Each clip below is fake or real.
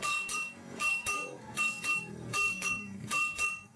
fake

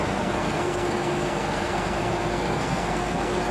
fake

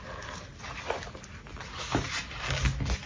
real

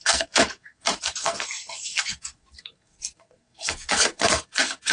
fake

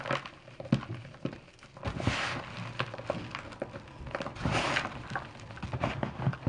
real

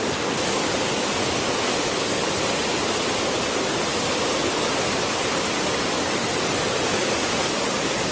real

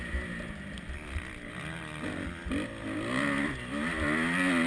real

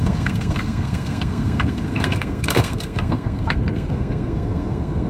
fake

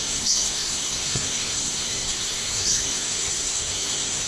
fake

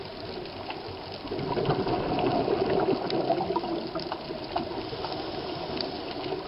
real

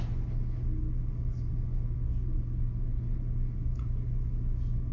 real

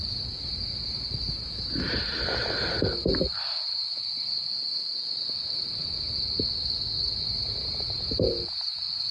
real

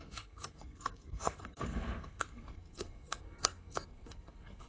fake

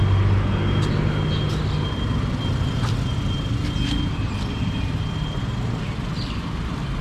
real